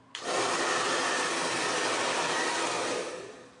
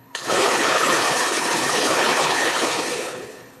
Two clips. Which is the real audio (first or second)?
first